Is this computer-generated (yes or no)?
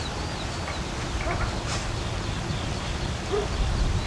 no